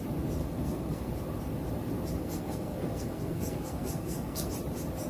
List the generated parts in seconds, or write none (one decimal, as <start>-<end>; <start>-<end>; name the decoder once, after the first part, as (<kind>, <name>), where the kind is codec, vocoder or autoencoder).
0.4-1.1 (codec, SNAC); 2.2-4.5